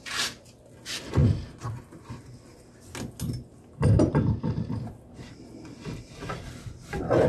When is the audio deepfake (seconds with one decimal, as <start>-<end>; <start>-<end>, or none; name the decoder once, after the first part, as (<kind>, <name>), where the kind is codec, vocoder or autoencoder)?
none